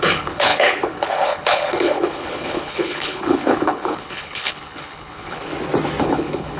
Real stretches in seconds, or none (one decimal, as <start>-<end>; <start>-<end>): 5.5-6.0